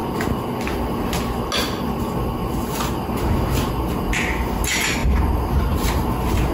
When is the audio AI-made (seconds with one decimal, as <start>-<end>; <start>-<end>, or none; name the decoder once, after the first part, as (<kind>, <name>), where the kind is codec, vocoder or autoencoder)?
none

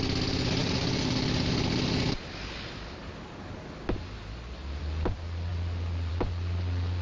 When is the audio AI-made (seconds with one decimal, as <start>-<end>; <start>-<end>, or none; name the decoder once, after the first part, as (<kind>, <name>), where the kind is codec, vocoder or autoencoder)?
none

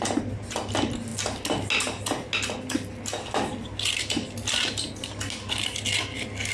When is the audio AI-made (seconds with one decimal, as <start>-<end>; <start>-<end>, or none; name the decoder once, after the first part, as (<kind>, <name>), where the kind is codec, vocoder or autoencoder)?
none

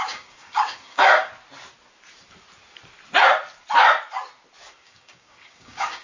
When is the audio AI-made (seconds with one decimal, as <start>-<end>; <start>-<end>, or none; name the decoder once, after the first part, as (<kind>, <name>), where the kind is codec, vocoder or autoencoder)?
0.0-1.3 (codec, DAC); 4.7-6.0